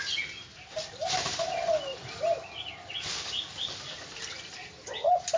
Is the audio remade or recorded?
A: recorded